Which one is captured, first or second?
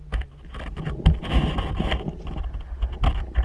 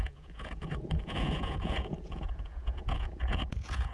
first